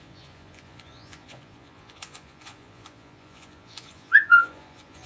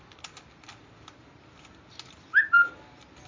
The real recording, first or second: second